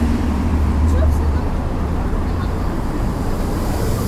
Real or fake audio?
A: fake